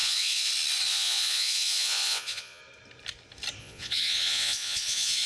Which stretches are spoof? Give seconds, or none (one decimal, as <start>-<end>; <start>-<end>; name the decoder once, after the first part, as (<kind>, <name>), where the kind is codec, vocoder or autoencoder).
0.0-0.5 (vocoder, Vocos); 0.9-2.6; 3.6-5.3